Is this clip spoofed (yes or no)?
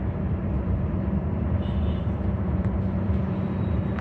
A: yes